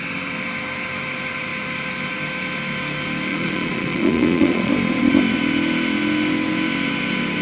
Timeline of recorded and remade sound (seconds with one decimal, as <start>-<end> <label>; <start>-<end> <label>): 0.0-3.3 recorded; 3.3-4.7 remade; 4.7-7.4 recorded